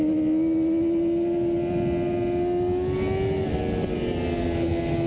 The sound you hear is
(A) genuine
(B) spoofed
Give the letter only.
A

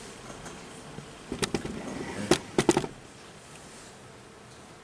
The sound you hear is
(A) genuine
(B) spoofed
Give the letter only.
A